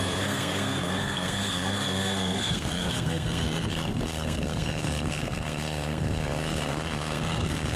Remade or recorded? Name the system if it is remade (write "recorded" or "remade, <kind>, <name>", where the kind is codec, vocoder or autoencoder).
remade, codec, SNAC